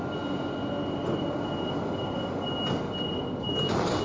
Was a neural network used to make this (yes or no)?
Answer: no